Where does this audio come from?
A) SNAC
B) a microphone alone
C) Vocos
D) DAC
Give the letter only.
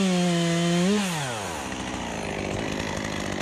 B